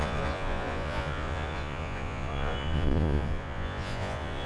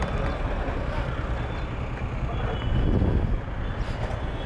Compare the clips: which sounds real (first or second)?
second